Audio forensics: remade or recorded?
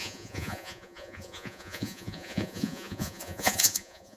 remade